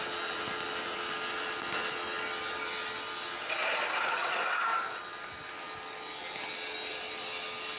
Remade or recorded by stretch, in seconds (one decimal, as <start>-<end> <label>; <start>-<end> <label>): 0.0-7.8 recorded